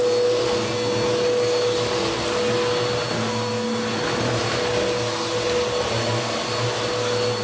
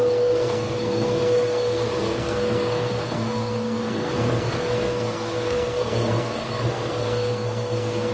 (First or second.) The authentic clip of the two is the first